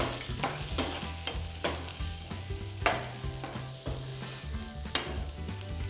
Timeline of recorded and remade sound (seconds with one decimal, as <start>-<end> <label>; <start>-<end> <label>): 0.0-1.9 recorded; 1.9-2.4 remade; 2.4-5.9 recorded

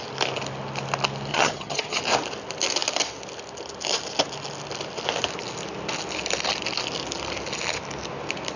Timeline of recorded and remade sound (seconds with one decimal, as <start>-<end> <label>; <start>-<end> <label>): 0.0-1.3 recorded; 1.3-2.0 remade; 2.0-8.6 recorded

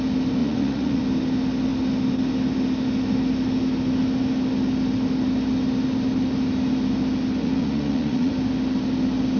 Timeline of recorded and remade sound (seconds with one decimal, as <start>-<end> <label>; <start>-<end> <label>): 0.0-0.4 recorded; 0.4-1.0 remade; 1.0-7.4 recorded; 7.4-8.3 remade; 8.3-9.4 recorded

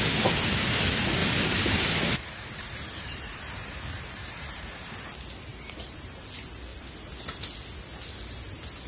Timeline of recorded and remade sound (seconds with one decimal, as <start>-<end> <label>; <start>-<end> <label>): 0.0-1.2 recorded; 1.2-4.9 remade; 4.9-5.5 recorded; 5.5-6.2 remade; 6.2-6.7 recorded; 6.7-7.2 remade; 7.2-8.9 recorded

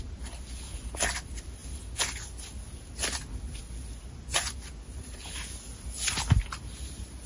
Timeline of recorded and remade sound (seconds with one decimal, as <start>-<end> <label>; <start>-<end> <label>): 0.0-7.3 recorded

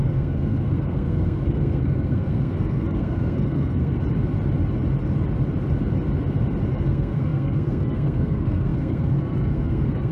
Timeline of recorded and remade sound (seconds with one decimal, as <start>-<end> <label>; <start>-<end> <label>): 0.0-4.0 remade; 4.0-6.7 recorded; 6.7-10.1 remade

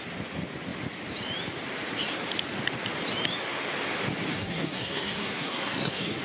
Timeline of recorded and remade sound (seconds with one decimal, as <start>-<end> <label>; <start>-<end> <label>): 0.0-4.3 recorded; 4.3-6.2 remade

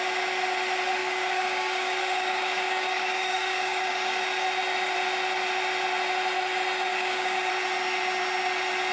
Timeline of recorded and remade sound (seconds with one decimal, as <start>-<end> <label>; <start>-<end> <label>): 0.0-1.0 recorded; 1.0-4.2 remade; 4.2-6.9 recorded; 6.9-7.5 remade; 7.5-8.9 recorded